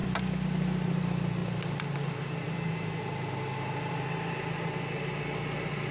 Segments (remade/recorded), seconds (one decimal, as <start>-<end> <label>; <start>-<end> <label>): 0.0-5.9 recorded